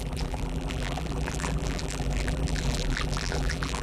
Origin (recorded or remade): remade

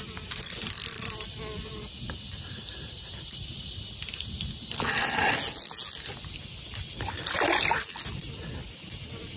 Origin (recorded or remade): recorded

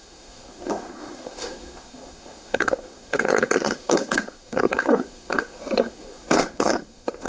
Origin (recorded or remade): remade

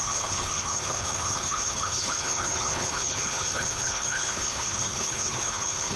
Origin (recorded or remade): remade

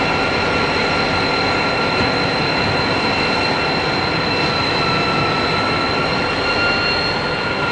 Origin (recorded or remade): recorded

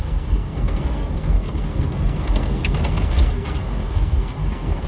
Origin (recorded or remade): remade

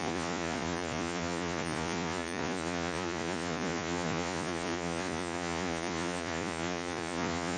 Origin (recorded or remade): remade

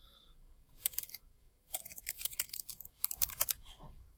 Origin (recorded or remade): remade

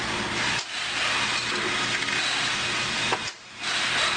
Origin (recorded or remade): recorded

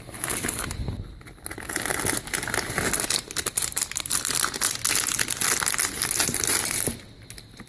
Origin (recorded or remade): recorded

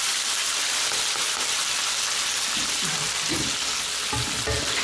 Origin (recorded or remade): recorded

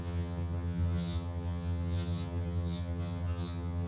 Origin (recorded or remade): remade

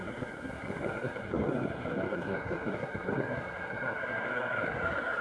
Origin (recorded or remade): remade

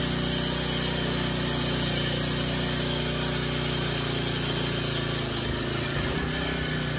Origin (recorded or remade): recorded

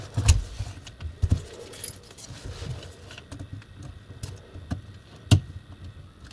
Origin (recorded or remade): recorded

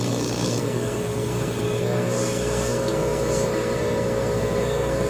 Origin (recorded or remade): remade